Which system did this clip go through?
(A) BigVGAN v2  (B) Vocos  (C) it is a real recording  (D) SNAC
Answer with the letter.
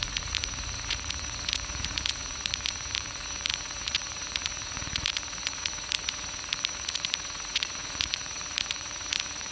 B